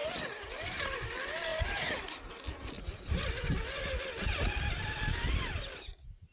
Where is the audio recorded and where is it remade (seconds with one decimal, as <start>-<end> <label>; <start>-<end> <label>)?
0.0-6.3 recorded